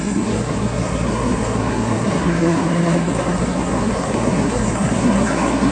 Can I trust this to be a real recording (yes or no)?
no